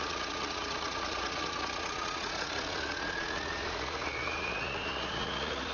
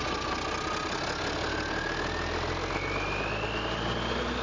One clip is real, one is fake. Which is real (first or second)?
second